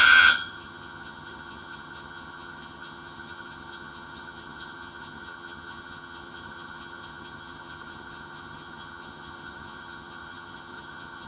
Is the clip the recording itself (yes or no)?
no